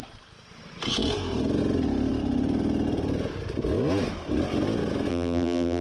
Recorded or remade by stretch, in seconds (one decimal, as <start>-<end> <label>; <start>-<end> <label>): 0.0-5.1 recorded; 5.1-5.8 remade

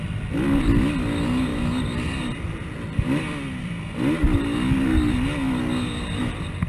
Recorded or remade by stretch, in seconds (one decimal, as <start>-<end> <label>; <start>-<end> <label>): 0.0-1.5 recorded; 1.5-2.1 remade; 2.1-6.7 recorded

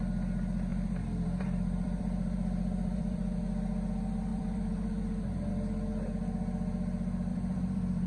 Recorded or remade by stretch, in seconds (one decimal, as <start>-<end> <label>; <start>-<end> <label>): 0.0-0.7 recorded; 0.7-3.4 remade; 3.4-4.3 recorded; 4.3-5.5 remade; 5.5-7.3 recorded; 7.3-8.1 remade